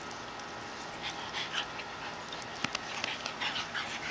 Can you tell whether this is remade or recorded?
recorded